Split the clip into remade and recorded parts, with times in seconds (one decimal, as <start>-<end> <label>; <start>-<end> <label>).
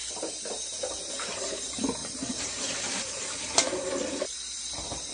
0.0-1.1 remade; 1.1-2.0 recorded; 2.0-5.1 remade